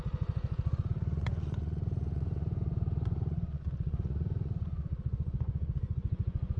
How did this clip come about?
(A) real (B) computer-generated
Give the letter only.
B